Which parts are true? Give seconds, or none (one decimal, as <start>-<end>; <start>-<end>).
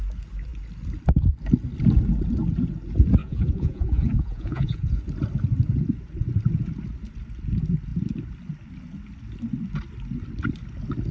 0.0-3.2; 5.0-11.1